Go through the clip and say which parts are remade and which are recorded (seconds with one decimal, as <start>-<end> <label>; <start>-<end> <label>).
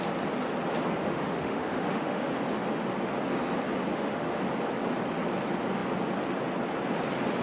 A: 0.0-1.0 recorded; 1.0-2.3 remade; 2.3-3.9 recorded; 3.9-4.4 remade; 4.4-7.4 recorded